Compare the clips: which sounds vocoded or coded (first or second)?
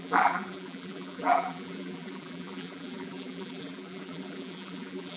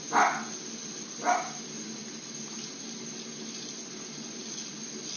first